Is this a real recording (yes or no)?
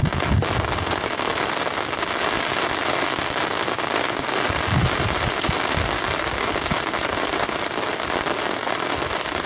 yes